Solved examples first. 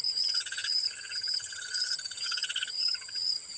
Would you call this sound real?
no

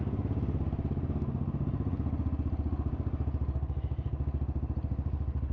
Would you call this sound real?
yes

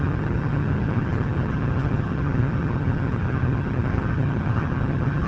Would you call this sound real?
no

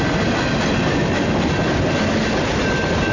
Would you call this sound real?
yes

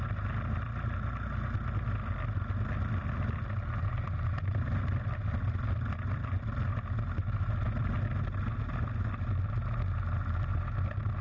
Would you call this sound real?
yes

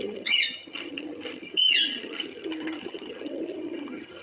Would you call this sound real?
no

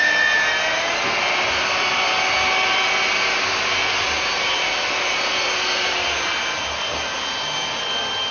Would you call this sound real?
yes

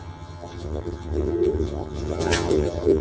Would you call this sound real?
no